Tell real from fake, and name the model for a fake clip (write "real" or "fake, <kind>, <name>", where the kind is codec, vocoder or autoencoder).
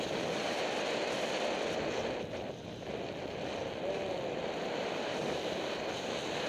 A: real